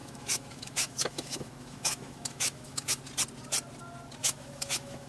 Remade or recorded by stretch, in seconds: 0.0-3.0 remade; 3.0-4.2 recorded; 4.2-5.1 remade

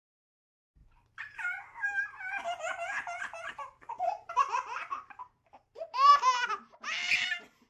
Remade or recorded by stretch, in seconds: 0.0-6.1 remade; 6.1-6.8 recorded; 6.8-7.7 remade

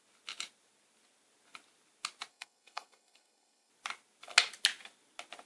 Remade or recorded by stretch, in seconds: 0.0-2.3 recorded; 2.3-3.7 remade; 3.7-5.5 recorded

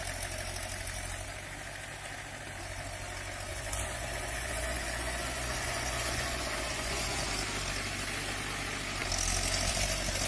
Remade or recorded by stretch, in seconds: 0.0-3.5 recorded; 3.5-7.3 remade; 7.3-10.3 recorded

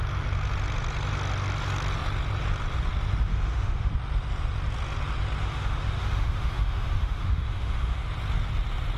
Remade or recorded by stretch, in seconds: 0.0-3.3 recorded; 3.3-3.9 remade; 3.9-5.4 recorded; 5.4-8.0 remade; 8.0-9.0 recorded

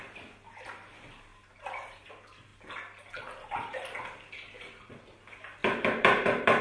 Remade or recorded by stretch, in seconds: 0.0-1.3 recorded; 1.3-2.1 remade; 2.1-5.6 recorded; 5.6-6.6 remade

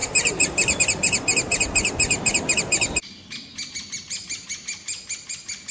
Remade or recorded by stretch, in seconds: 0.0-0.8 remade; 0.8-5.7 recorded

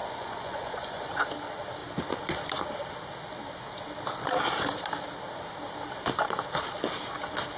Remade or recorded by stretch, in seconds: 0.0-1.2 remade; 1.2-7.6 recorded